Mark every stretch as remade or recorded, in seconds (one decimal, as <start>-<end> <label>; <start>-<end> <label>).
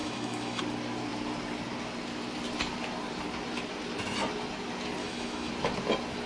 0.0-0.6 remade; 0.6-5.0 recorded; 5.0-5.5 remade; 5.5-6.3 recorded